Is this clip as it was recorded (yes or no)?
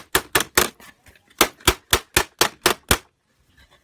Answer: yes